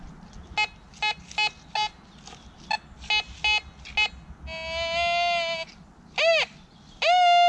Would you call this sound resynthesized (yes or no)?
no